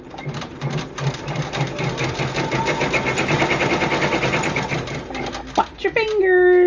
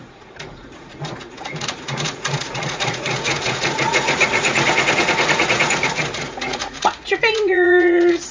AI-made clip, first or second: second